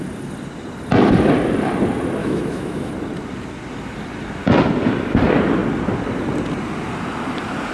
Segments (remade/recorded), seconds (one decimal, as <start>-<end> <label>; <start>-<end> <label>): 0.0-2.2 recorded; 2.2-2.9 remade; 2.9-7.7 recorded